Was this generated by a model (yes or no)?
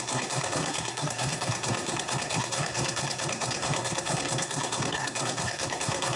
yes